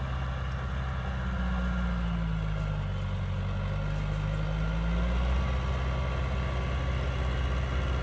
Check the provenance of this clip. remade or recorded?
recorded